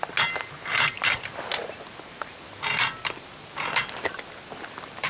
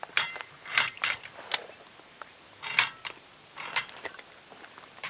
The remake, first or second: second